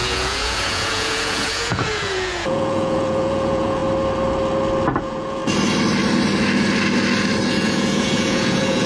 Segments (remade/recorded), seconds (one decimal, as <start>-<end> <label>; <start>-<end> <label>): 0.0-3.8 remade; 3.8-5.0 recorded; 5.0-5.4 remade; 5.4-7.5 recorded; 7.5-8.9 remade